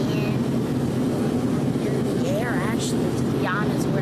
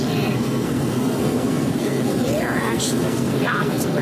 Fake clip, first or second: second